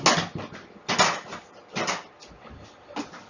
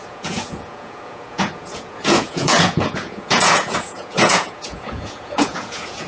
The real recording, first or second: first